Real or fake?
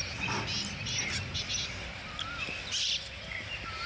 real